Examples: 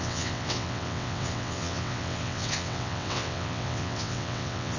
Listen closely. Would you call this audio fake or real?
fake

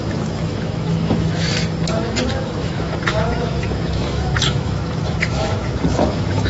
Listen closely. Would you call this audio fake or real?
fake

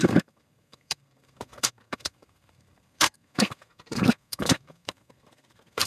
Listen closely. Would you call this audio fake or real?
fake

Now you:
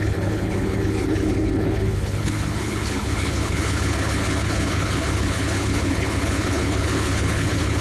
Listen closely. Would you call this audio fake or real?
fake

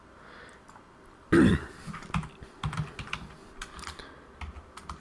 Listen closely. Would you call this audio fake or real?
real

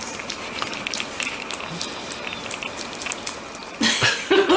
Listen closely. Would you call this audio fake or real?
real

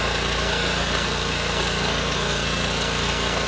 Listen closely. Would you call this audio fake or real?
fake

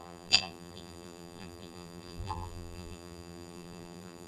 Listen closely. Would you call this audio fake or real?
fake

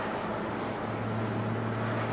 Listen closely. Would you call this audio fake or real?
real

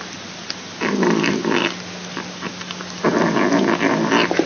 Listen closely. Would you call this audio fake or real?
real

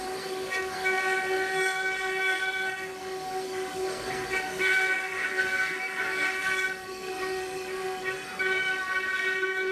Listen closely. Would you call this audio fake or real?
fake